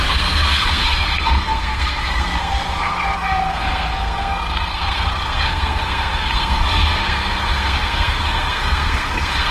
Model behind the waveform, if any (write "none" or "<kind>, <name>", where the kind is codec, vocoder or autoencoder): codec, SNAC